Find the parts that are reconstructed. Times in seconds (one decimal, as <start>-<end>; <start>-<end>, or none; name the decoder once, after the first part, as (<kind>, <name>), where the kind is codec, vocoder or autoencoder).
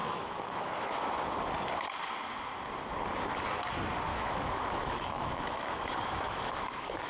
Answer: 0.0-1.0 (autoencoder, DAC-VAE); 4.1-7.1